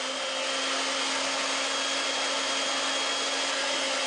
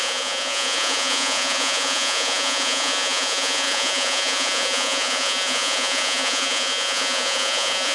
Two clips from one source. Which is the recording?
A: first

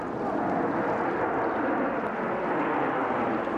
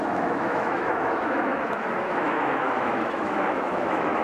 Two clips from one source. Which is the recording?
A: first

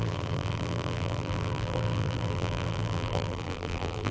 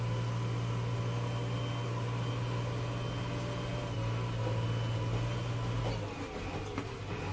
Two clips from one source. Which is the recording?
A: second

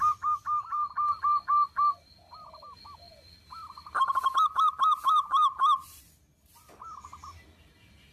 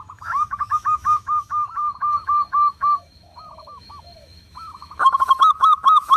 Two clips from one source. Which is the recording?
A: first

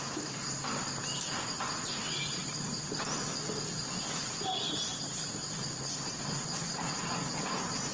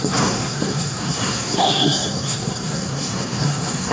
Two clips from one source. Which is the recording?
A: first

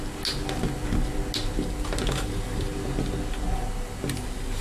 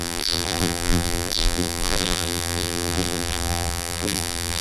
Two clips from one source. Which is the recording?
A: first